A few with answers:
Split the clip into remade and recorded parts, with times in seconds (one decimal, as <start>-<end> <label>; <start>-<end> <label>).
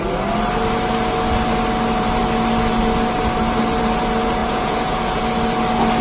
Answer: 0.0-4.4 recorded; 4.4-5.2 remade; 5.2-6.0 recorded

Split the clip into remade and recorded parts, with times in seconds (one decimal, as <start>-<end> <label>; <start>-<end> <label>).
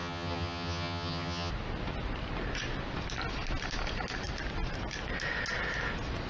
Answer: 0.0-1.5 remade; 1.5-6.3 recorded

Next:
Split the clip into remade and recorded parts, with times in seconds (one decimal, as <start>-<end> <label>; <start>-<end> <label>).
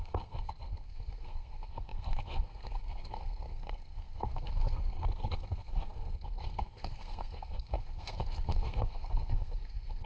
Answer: 0.0-10.1 remade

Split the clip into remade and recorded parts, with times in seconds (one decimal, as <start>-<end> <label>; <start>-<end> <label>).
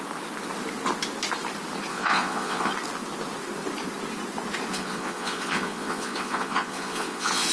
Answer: 0.0-1.9 recorded; 1.9-2.7 remade; 2.7-4.7 recorded; 4.7-7.5 remade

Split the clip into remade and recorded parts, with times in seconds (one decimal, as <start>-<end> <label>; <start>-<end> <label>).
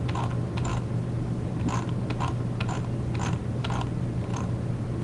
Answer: 0.0-5.0 recorded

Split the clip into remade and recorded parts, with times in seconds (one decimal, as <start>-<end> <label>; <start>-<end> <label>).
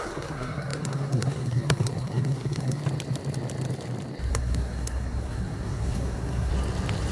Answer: 0.0-2.8 remade; 2.8-4.3 recorded; 4.3-6.5 remade; 6.5-7.1 recorded